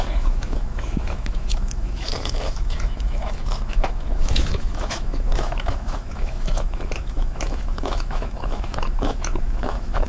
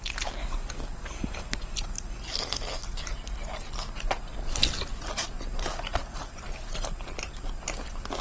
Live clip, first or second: second